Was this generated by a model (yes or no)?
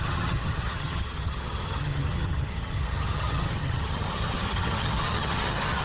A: yes